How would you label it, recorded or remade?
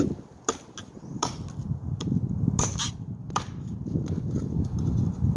recorded